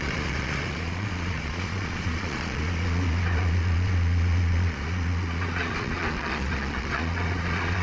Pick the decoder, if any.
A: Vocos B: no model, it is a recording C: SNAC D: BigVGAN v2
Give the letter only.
A